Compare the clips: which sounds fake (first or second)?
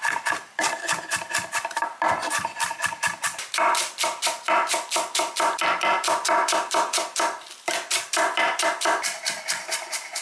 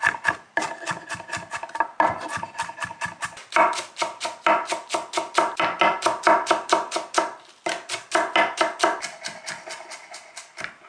first